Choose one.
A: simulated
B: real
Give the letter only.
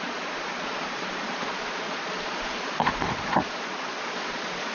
A